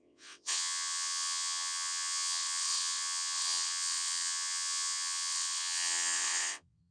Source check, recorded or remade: remade